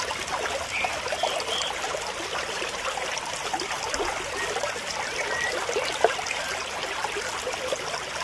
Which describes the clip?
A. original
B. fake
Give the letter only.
A